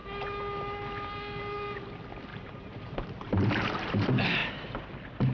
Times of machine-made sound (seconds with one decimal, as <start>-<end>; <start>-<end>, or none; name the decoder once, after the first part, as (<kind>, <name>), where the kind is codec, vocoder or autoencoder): 2.3-3.8 (vocoder, BigVGAN v2)